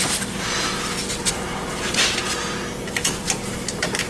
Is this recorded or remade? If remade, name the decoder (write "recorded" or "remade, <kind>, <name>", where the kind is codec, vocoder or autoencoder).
recorded